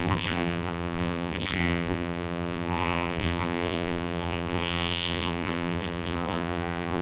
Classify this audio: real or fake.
fake